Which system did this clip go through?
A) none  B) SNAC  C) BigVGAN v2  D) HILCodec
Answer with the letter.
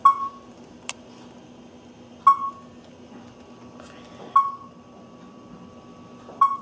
A